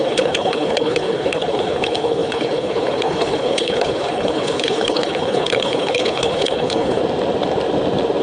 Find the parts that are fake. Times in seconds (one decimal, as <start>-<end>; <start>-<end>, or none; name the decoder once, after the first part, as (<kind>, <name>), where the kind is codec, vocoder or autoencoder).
0.0-7.0 (codec, HILCodec)